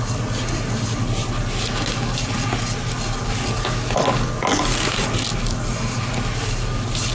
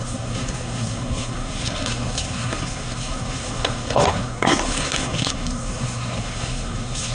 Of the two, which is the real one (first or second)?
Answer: first